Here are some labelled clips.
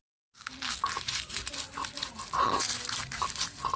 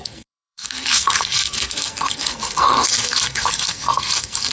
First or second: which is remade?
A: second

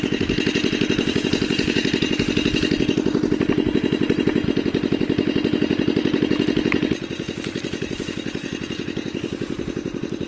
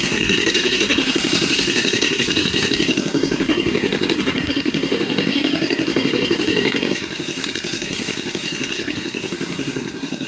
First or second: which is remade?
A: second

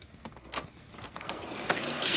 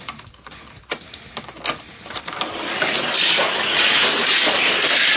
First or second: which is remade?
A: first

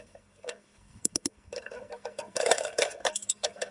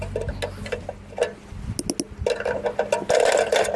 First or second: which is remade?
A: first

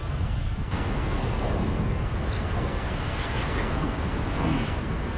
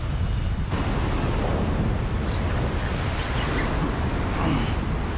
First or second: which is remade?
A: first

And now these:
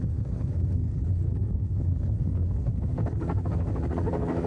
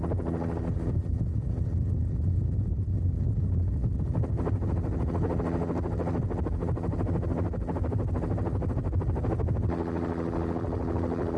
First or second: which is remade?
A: first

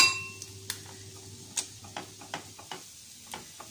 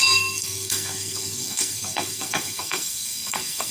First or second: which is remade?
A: second